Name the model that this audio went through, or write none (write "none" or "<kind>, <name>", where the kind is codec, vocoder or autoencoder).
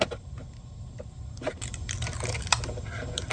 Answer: none